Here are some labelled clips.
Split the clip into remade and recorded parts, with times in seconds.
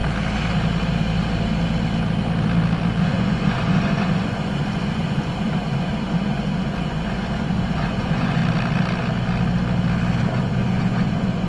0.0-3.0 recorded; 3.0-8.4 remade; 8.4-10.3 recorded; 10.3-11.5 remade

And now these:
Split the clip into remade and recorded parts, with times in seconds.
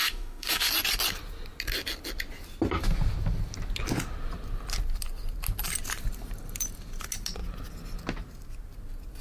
0.0-0.7 remade; 0.7-9.2 recorded